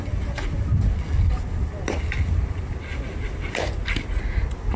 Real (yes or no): yes